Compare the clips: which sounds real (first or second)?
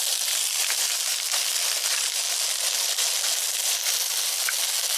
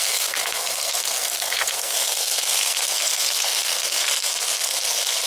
first